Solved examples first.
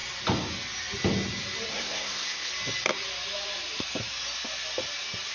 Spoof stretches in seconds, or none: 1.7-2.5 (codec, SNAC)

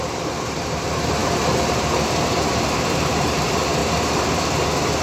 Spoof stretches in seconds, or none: 0.0-3.8 (vocoder, BigVGAN v2)

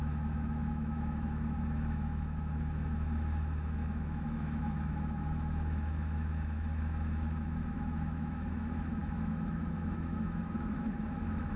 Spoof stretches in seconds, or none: 0.0-11.6 (autoencoder, DAC-VAE)